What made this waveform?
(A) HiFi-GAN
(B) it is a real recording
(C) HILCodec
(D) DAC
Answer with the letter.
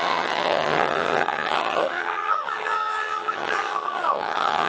A